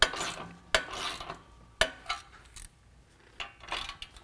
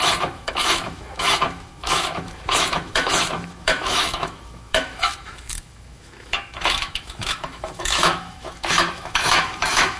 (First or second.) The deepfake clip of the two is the second